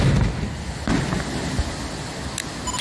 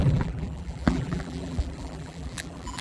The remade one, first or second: second